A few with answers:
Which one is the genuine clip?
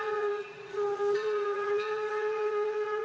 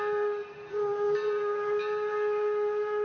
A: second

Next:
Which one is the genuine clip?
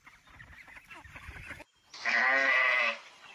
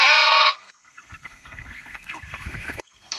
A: first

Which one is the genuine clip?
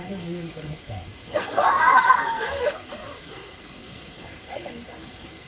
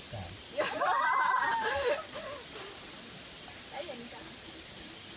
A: second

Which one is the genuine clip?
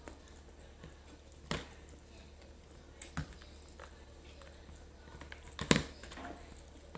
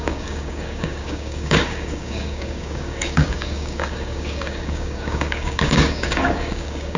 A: first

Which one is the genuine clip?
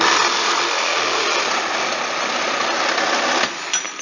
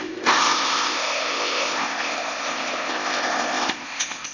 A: first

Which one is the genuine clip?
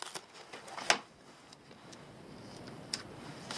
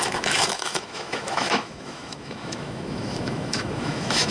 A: first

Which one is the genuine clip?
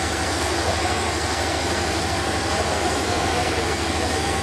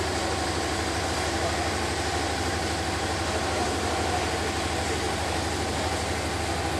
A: second